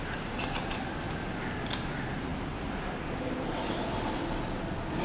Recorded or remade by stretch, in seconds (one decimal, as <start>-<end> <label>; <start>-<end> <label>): 0.0-5.0 recorded